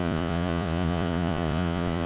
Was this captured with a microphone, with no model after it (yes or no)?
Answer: no